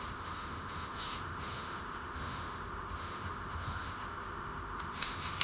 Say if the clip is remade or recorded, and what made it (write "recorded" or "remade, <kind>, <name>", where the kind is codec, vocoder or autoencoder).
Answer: remade, autoencoder, DAC-VAE